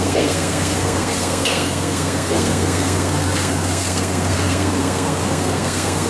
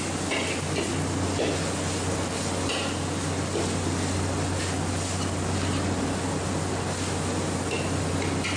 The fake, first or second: first